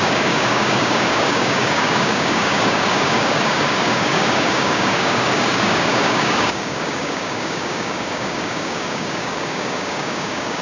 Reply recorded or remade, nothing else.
remade